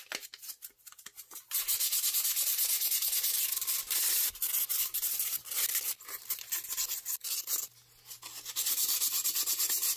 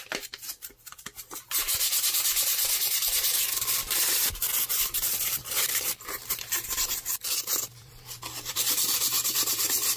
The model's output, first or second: second